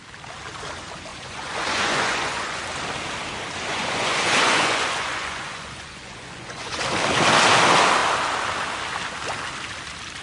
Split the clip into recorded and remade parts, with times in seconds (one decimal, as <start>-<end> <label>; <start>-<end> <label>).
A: 0.0-1.1 recorded; 1.1-2.6 remade; 2.6-3.7 recorded; 3.7-6.8 remade; 6.8-10.2 recorded